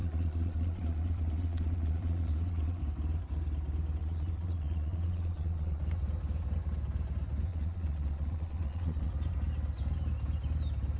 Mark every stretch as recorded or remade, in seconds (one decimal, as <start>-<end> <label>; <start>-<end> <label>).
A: 0.0-2.8 remade; 2.8-4.0 recorded; 4.0-5.8 remade; 5.8-7.5 recorded; 7.5-9.1 remade; 9.1-11.0 recorded

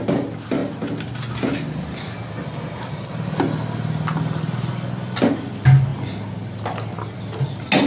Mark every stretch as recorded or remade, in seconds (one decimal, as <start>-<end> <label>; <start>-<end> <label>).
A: 0.0-7.9 recorded

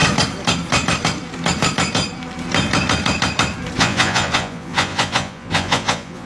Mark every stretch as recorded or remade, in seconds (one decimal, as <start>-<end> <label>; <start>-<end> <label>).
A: 0.0-3.8 recorded; 3.8-6.3 remade

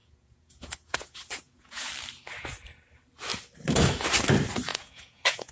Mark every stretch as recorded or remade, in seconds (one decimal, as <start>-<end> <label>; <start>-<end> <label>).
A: 0.0-1.9 remade; 1.9-4.7 recorded; 4.7-5.5 remade

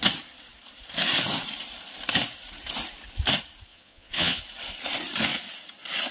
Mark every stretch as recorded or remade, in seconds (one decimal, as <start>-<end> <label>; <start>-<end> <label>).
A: 0.0-3.7 recorded; 3.7-4.4 remade; 4.4-6.1 recorded

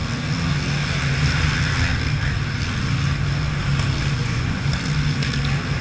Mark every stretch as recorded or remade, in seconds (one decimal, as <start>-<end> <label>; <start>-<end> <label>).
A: 0.0-4.2 recorded; 4.2-4.7 remade; 4.7-5.8 recorded